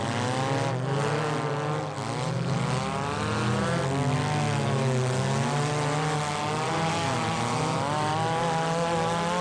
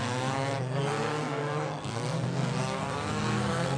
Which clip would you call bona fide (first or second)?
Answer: first